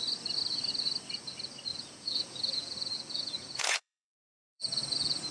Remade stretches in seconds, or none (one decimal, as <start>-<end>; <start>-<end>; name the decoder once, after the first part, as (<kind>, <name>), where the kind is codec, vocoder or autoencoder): 1.7-5.3 (vocoder, Vocos)